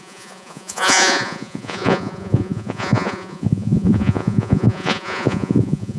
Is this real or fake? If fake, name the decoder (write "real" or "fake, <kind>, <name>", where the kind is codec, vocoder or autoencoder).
fake, vocoder, Vocos